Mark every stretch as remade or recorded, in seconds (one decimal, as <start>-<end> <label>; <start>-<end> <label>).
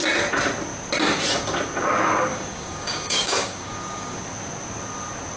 0.0-2.3 recorded; 2.3-4.2 remade; 4.2-5.4 recorded